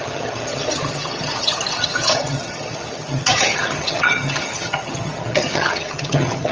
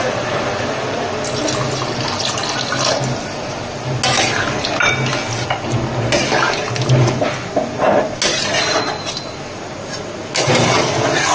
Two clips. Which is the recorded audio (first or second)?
second